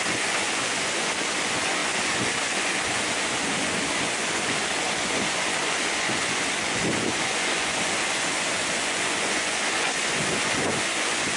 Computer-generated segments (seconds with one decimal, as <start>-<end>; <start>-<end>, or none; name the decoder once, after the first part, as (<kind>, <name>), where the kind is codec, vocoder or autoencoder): 0.0-11.4 (vocoder, Vocos)